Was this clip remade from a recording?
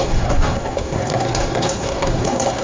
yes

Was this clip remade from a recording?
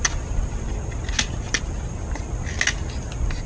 no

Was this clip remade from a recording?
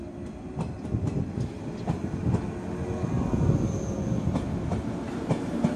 no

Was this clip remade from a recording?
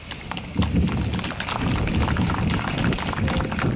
no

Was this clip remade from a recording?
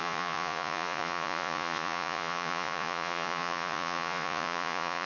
yes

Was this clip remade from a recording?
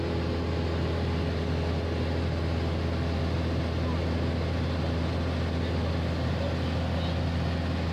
no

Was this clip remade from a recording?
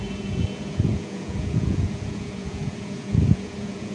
yes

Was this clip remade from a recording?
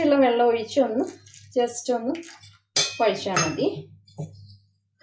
no